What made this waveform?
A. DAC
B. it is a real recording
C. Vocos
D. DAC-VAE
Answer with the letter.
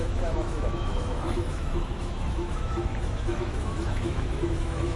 D